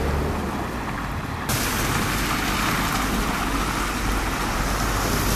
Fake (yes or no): no